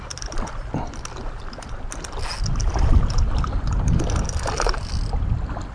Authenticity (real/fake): real